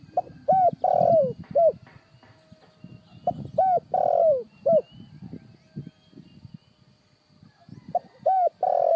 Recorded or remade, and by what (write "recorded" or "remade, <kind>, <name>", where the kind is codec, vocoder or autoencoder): recorded